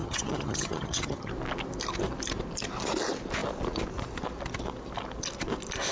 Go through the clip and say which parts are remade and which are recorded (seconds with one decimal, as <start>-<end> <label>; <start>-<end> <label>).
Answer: 0.0-1.3 remade; 1.3-5.9 recorded